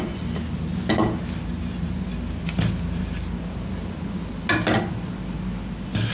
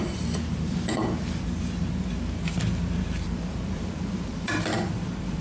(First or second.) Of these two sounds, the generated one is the second